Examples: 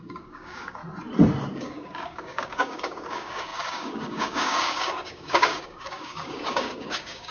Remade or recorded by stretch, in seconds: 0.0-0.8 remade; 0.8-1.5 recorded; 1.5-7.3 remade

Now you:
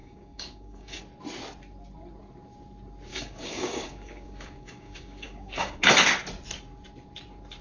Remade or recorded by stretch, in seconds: 0.0-1.0 remade; 1.0-3.1 recorded; 3.1-5.9 remade; 5.9-7.6 recorded

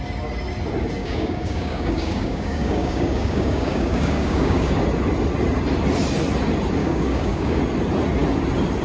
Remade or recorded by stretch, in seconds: 0.0-1.0 recorded; 1.0-4.7 remade; 4.7-6.8 recorded; 6.8-7.6 remade; 7.6-8.8 recorded

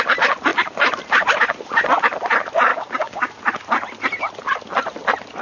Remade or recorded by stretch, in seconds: 0.0-2.7 recorded; 2.7-3.3 remade; 3.3-5.4 recorded

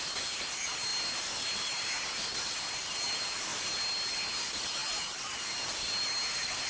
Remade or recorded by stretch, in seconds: 0.0-6.7 recorded

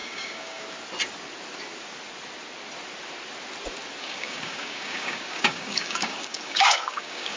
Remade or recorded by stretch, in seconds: 0.0-0.6 remade; 0.6-4.0 recorded; 4.0-7.4 remade